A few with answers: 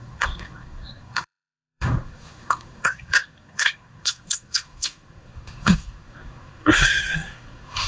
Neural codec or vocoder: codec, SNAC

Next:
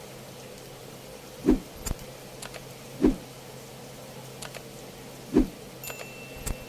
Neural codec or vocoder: none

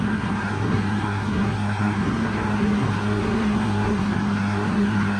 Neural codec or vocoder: codec, SNAC